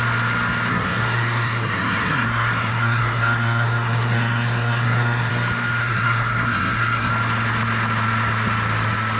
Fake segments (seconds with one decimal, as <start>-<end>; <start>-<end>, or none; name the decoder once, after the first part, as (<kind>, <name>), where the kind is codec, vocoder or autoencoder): 0.7-5.3 (codec, SNAC); 5.8-7.1